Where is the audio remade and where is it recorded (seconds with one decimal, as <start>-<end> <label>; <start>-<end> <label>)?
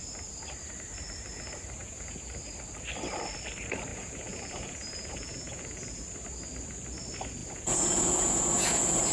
0.0-1.8 recorded; 1.8-2.3 remade; 2.3-3.9 recorded; 3.9-6.0 remade; 6.0-7.4 recorded; 7.4-9.1 remade